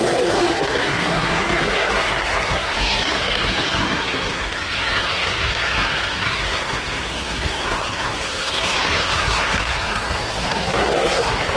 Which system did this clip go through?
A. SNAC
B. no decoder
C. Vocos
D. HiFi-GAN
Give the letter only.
A